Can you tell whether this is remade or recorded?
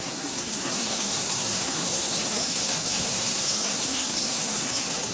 remade